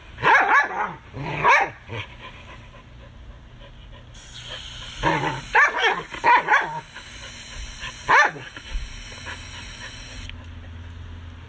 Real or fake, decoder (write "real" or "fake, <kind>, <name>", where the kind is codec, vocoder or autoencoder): real